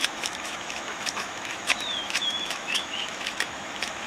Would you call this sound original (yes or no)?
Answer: no